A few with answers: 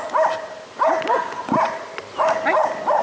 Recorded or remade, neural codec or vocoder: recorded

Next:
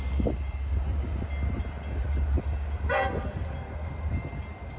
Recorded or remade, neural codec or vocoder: recorded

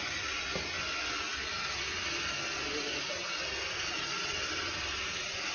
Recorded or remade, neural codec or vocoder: recorded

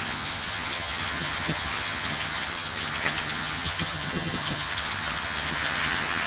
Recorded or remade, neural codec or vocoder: remade, vocoder, HiFi-GAN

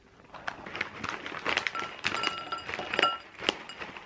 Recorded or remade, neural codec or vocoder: recorded